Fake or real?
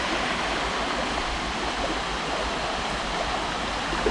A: real